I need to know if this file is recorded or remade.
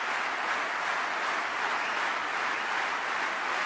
recorded